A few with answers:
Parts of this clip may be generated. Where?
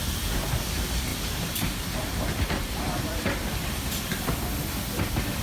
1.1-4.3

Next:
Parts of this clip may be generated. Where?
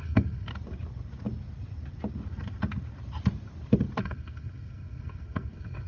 0.0-0.5; 4.0-5.9